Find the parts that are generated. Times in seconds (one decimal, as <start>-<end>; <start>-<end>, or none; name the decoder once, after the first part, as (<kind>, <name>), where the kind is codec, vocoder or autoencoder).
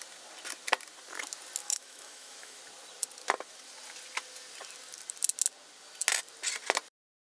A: 1.6-2.6 (autoencoder, DAC-VAE)